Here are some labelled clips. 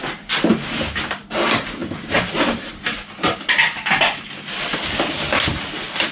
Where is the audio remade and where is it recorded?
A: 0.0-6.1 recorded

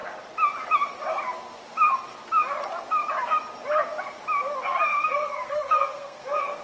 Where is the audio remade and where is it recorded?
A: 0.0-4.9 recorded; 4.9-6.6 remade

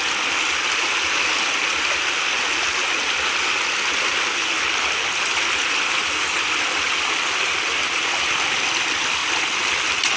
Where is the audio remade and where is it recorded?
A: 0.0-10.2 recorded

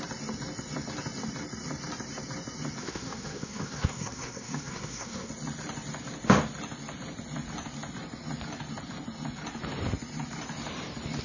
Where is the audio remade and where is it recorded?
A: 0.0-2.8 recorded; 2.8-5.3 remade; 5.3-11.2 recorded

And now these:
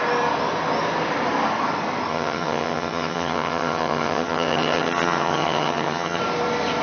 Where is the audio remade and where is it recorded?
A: 0.0-2.1 recorded; 2.1-6.2 remade; 6.2-6.8 recorded

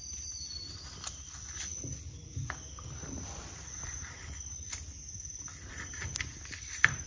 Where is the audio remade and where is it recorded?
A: 0.0-1.7 remade; 1.7-3.1 recorded; 3.1-7.1 remade

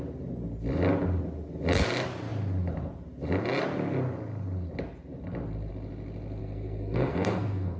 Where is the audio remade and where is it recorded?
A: 0.0-6.4 recorded; 6.4-7.8 remade